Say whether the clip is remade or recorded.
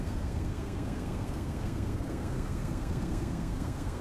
remade